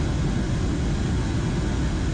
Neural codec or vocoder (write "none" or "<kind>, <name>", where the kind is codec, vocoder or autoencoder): none